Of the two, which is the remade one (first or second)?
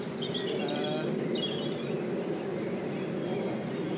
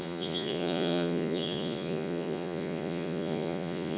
second